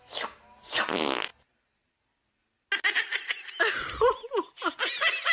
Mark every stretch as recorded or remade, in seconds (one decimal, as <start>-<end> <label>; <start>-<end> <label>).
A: 0.0-5.3 recorded